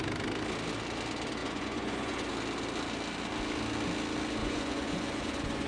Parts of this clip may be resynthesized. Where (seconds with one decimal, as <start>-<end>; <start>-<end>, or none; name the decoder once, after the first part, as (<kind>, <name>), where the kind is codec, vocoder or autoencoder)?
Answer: 1.4-2.3 (vocoder, Vocos); 4.4-5.7